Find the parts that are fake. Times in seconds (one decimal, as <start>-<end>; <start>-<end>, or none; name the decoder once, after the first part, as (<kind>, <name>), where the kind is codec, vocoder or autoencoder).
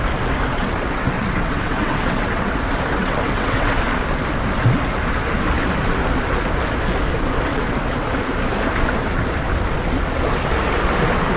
0.5-2.5 (vocoder, WaveNeXt); 3.0-3.8; 7.5-8.1